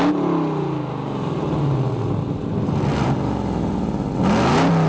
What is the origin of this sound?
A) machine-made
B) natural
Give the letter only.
B